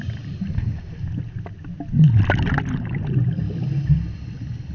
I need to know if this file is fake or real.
real